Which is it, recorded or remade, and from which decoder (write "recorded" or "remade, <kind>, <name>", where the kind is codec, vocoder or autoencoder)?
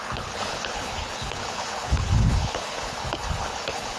remade, codec, HILCodec